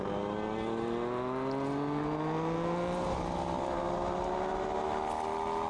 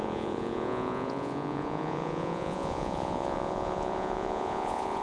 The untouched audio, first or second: first